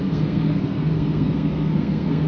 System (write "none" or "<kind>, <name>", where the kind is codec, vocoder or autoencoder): codec, SNAC